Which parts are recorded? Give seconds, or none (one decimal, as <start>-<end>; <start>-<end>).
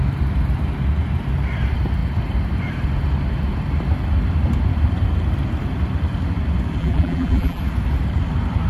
0.0-6.8; 7.6-8.7